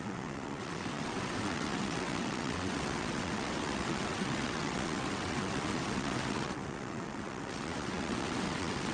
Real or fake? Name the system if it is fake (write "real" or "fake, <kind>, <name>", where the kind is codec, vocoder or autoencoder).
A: fake, vocoder, WaveNeXt